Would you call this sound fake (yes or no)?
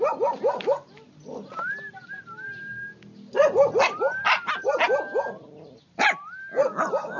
no